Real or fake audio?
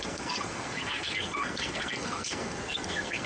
fake